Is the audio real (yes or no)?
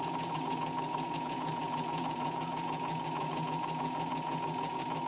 no